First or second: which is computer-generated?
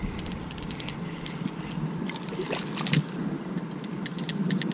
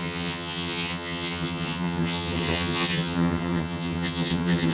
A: second